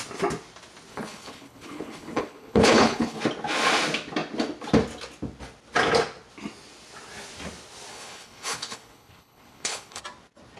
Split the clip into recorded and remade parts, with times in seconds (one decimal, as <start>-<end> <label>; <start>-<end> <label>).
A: 0.0-0.9 recorded; 0.9-3.2 remade; 3.2-7.9 recorded; 7.9-10.0 remade; 10.0-10.6 recorded